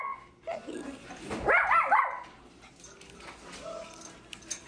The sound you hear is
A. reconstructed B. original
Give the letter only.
B